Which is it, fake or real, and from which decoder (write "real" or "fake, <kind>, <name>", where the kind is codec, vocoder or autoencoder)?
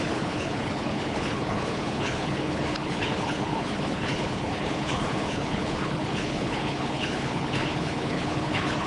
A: fake, codec, HILCodec